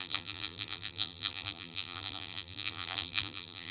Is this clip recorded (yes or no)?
no